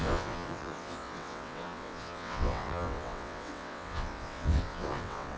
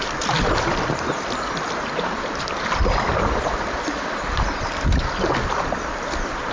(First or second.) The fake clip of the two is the first